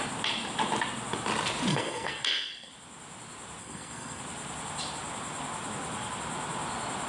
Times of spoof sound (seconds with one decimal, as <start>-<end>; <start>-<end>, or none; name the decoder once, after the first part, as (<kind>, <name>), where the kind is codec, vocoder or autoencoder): 1.7-2.7 (codec, SNAC); 3.6-4.2

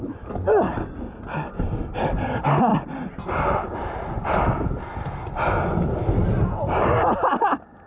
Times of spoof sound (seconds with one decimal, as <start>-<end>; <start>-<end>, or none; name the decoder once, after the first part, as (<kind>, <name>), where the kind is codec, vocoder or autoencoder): none

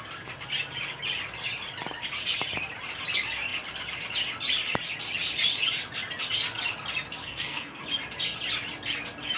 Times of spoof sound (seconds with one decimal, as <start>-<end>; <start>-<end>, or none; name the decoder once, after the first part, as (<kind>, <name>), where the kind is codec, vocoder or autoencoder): 7.2-7.8 (codec, SNAC)

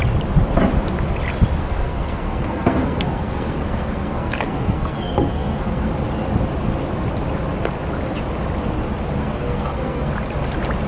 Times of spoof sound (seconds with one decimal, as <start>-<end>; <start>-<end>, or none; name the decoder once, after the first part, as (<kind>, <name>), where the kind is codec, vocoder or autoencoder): 1.6-5.9 (codec, SNAC); 9.2-10.1

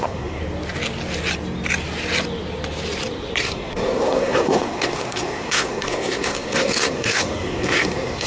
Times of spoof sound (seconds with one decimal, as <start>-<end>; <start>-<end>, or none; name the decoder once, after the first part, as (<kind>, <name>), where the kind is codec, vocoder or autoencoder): 0.0-0.4 (codec, SNAC); 3.4-8.3